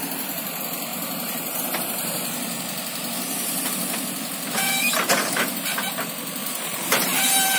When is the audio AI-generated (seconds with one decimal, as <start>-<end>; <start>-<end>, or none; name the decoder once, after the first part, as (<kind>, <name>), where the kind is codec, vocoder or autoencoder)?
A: 0.9-3.7 (vocoder, BigVGAN v2); 6.4-7.6